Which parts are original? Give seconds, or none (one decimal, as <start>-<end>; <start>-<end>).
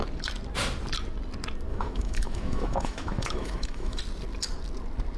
0.0-1.7; 4.0-5.2